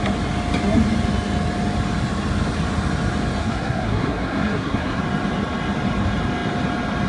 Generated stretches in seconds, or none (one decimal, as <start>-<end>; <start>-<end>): 3.4-5.0